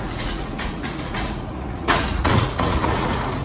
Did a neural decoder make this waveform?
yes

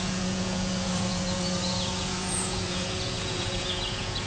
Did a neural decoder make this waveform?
yes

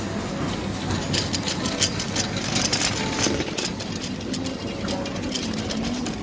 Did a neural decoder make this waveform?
no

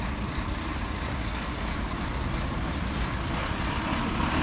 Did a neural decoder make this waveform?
no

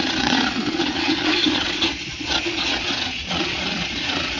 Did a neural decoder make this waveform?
yes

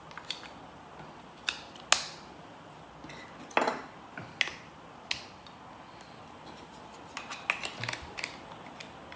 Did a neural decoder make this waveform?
no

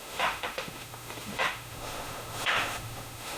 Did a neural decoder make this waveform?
yes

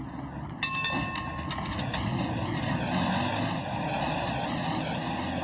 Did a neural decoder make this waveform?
no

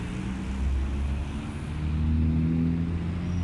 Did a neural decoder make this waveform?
no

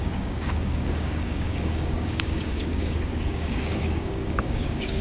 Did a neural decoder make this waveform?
yes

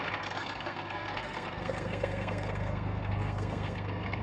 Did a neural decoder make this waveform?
yes